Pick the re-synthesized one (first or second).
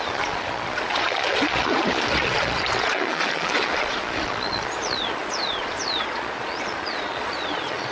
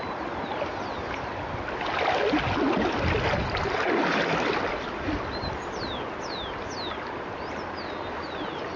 first